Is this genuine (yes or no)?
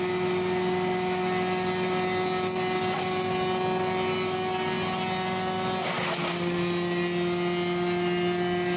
yes